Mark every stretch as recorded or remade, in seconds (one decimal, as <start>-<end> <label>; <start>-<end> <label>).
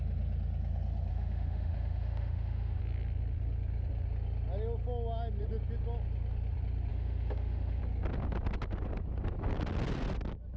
0.0-1.1 recorded; 1.1-2.8 remade; 2.8-6.9 recorded; 6.9-7.8 remade; 7.8-10.6 recorded